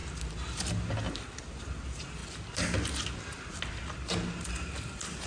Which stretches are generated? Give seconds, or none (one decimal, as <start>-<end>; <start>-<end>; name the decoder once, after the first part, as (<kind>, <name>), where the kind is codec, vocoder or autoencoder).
none

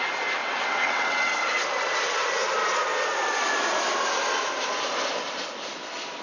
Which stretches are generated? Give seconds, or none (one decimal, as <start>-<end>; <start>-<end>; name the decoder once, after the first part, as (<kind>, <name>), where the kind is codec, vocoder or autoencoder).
0.4-1.3 (vocoder, WaveNeXt)

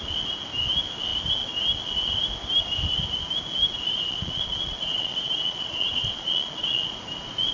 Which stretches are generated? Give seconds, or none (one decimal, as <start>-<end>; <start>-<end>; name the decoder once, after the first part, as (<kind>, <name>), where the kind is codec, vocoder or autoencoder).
3.9-6.9 (vocoder, Vocos)

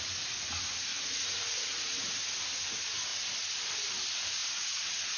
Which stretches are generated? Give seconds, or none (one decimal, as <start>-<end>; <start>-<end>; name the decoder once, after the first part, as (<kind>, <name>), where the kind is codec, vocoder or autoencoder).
0.9-2.2 (vocoder, Vocos); 4.4-5.2